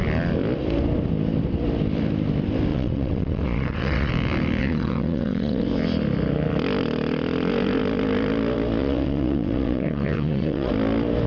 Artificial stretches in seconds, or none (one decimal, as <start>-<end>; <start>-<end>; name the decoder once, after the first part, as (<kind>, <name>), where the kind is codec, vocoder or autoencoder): 2.7-4.1 (vocoder, WaveNeXt); 4.6-5.6; 8.8-10.7